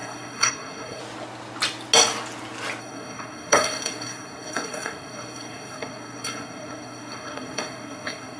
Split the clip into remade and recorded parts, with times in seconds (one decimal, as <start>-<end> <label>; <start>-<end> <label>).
0.0-1.0 remade; 1.0-2.8 recorded; 2.8-8.4 remade